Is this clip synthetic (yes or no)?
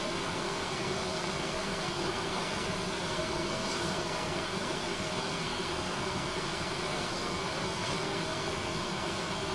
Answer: yes